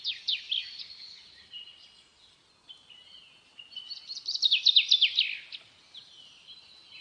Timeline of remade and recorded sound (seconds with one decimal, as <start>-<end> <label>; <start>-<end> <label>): 0.0-7.0 recorded